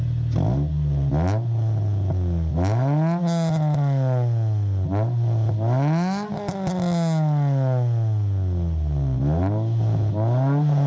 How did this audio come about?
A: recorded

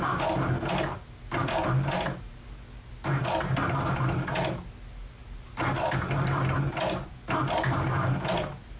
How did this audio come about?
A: recorded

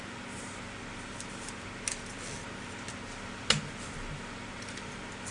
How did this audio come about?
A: recorded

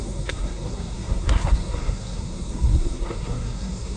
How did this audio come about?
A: remade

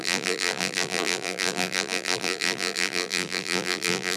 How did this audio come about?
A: remade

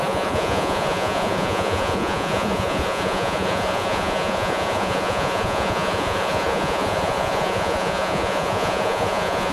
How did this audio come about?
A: remade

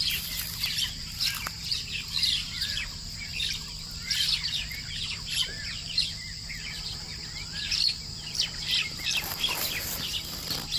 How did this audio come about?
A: remade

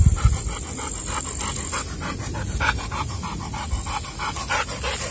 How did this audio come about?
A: recorded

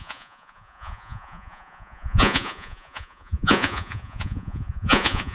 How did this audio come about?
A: remade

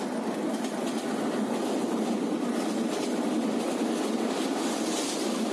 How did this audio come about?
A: recorded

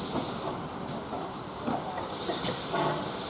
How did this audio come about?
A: recorded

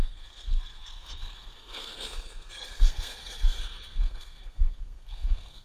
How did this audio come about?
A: remade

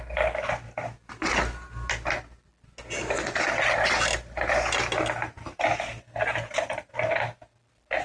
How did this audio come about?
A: recorded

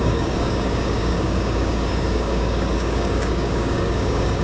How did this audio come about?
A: remade